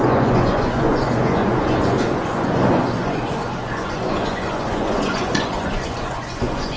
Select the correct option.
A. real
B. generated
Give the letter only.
B